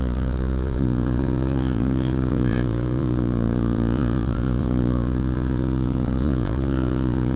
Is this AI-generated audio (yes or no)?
yes